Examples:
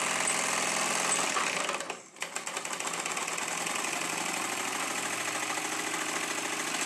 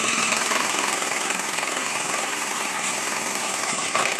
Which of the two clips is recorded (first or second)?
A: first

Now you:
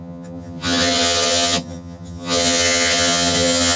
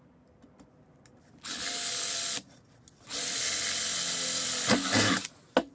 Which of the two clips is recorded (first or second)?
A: second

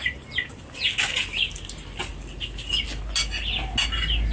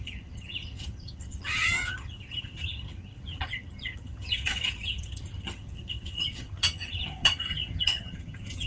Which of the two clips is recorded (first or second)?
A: first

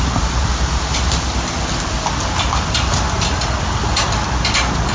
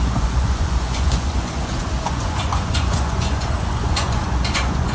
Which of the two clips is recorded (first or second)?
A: first